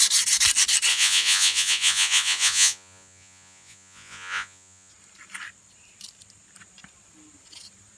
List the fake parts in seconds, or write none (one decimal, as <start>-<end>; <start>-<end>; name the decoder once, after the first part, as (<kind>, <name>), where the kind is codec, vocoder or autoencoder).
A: 0.9-4.9 (vocoder, Vocos)